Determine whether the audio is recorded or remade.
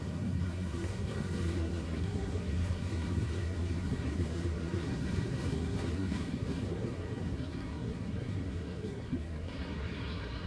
remade